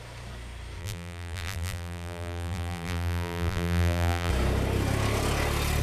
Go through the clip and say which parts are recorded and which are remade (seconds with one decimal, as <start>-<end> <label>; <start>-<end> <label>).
0.0-0.8 recorded; 0.8-4.3 remade; 4.3-5.8 recorded